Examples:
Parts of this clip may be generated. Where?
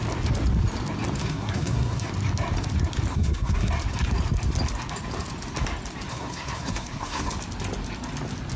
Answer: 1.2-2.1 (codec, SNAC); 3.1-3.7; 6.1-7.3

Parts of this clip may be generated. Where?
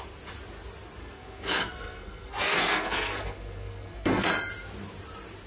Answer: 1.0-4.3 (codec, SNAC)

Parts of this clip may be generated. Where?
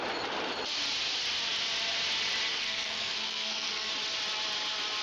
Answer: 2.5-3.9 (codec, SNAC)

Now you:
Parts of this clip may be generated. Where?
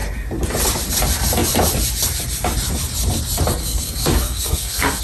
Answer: 3.6-5.0 (codec, SNAC)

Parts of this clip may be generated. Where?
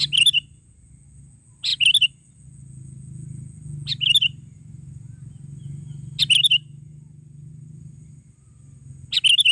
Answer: none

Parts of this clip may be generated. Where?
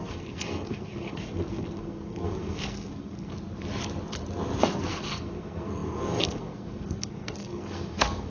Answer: 0.0-3.3 (codec, SNAC); 4.6-8.3